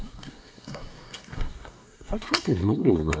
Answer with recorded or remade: remade